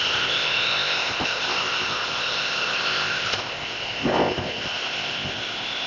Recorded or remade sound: remade